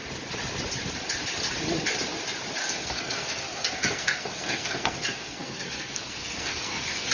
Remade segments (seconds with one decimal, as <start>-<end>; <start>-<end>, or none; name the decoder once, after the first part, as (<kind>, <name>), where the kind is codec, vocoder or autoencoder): 2.6-7.1 (codec, SNAC)